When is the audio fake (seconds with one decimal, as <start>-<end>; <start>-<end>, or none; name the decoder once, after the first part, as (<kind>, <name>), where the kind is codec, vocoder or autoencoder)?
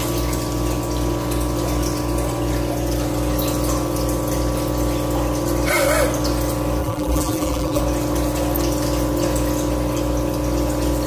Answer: 6.8-7.8 (vocoder, BigVGAN v2)